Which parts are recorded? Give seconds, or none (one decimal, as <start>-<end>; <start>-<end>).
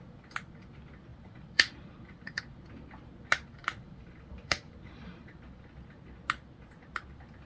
0.0-1.1; 2.4-3.6; 5.7-7.5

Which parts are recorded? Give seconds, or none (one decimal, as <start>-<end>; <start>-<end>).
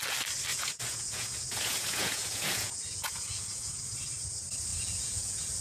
0.0-0.5; 3.8-4.7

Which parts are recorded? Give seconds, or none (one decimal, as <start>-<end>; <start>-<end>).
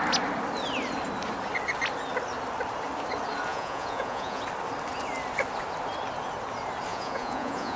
0.0-3.5; 4.4-6.9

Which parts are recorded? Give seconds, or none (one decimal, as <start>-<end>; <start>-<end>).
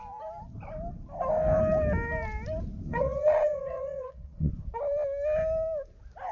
0.0-2.9; 4.5-6.3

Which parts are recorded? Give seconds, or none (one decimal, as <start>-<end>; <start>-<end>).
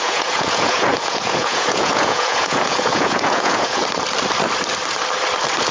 3.8-5.7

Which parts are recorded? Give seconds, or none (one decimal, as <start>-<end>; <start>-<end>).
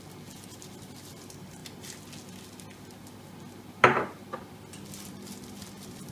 0.0-6.1